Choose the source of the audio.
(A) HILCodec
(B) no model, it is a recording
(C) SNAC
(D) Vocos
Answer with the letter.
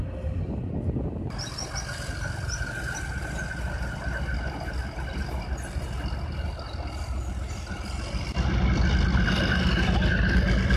B